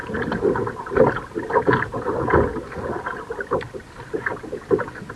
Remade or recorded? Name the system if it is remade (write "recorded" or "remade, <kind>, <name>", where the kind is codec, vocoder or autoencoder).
recorded